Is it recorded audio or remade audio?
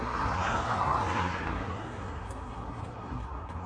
remade